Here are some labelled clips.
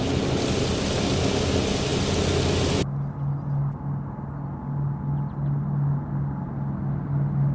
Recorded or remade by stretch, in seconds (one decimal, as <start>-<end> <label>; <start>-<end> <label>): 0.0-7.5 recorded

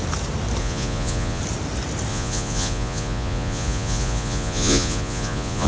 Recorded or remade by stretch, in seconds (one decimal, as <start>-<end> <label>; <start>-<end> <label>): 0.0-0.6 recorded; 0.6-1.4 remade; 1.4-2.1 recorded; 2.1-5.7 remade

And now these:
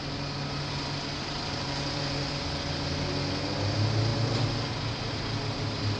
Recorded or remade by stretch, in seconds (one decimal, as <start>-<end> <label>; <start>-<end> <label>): 0.0-1.2 recorded; 1.2-2.3 remade; 2.3-6.0 recorded

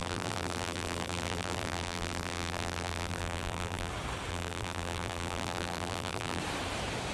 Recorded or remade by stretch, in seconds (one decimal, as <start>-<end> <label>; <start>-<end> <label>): 0.0-3.9 remade; 3.9-4.3 recorded; 4.3-6.4 remade; 6.4-7.1 recorded

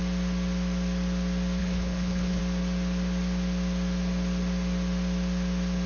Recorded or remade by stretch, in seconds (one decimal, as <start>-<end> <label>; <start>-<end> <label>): 0.0-1.6 recorded; 1.6-2.4 remade; 2.4-5.9 recorded